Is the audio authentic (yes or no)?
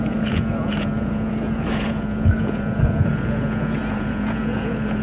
no